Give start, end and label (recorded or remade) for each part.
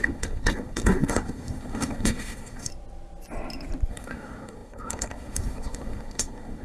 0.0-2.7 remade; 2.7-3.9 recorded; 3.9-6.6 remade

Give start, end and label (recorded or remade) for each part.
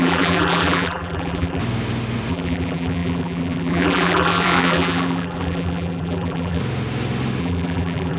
0.0-1.6 remade; 1.6-2.3 recorded; 2.3-6.6 remade; 6.6-7.4 recorded; 7.4-8.2 remade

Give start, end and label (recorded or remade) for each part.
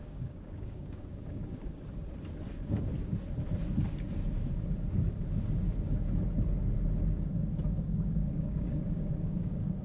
0.0-1.6 remade; 1.6-2.5 recorded; 2.5-2.9 remade; 2.9-7.9 recorded; 7.9-9.8 remade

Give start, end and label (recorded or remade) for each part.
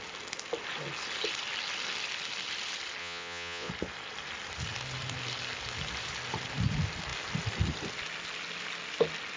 0.0-3.0 recorded; 3.0-3.7 remade; 3.7-9.4 recorded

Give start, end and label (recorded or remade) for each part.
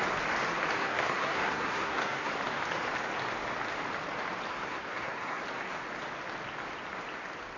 0.0-0.8 recorded; 0.8-2.3 remade; 2.3-4.5 recorded; 4.5-5.4 remade; 5.4-7.6 recorded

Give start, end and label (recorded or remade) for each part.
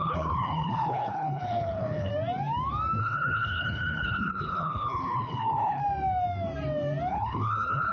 0.0-2.1 remade; 2.1-3.0 recorded; 3.0-5.8 remade; 5.8-7.1 recorded; 7.1-7.9 remade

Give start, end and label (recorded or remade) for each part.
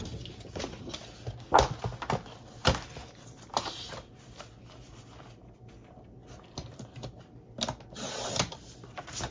0.0-9.3 recorded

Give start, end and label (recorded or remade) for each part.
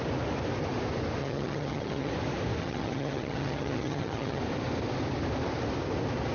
0.0-1.2 recorded; 1.2-2.1 remade; 2.1-2.6 recorded; 2.6-4.4 remade; 4.4-6.3 recorded